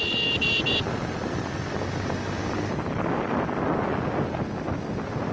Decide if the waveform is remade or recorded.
recorded